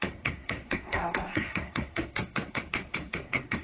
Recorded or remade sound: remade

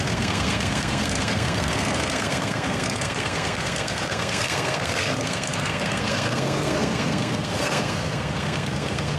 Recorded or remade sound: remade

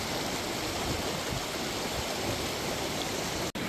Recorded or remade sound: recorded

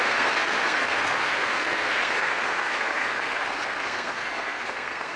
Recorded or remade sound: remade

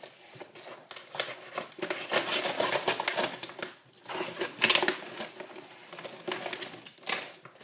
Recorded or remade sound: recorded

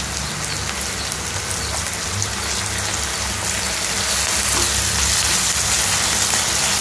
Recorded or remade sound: recorded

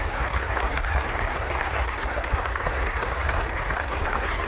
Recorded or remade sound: remade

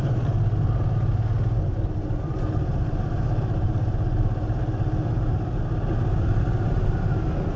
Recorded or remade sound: recorded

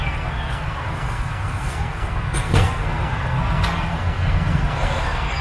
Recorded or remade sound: remade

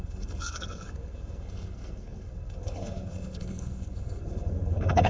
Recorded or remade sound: remade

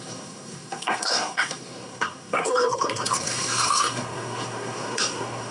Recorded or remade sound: remade